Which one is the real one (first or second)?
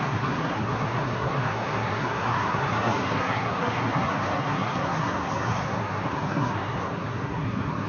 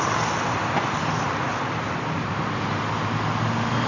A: second